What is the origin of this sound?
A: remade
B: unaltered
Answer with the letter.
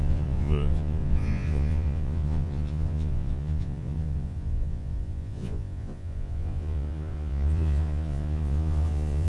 A